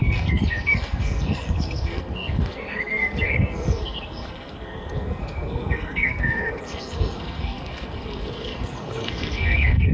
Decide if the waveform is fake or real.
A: fake